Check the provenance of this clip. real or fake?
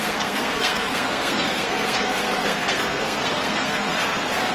fake